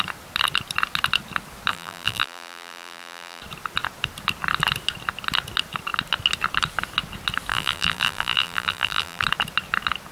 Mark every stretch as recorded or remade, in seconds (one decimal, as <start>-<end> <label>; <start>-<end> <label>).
0.0-1.7 recorded; 1.7-3.4 remade; 3.4-7.5 recorded; 7.5-9.2 remade; 9.2-10.1 recorded